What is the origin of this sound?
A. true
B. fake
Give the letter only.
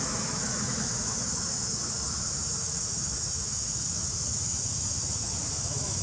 B